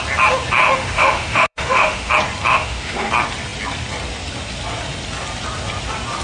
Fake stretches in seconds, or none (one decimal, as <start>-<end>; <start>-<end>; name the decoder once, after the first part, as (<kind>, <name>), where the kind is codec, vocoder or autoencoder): 0.6-2.1 (autoencoder, DAC-VAE); 2.5-3.1